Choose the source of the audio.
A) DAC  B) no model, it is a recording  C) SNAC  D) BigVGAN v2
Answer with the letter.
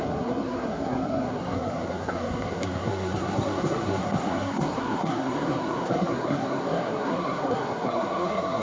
C